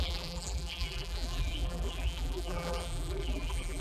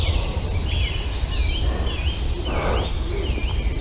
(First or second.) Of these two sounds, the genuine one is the second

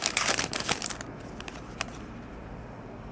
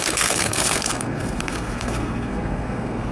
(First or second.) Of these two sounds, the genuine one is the first